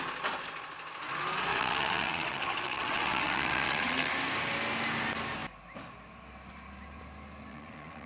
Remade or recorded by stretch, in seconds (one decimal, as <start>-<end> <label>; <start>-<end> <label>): 0.0-1.5 recorded; 1.5-4.1 remade; 4.1-7.5 recorded; 7.5-8.1 remade